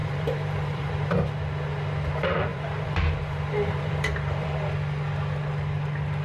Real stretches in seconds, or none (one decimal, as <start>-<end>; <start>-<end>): 0.9-2.5; 4.7-6.2